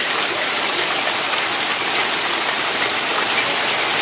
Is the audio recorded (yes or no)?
yes